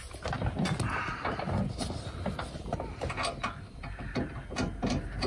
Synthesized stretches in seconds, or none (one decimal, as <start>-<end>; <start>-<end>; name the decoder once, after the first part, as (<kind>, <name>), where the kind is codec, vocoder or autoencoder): none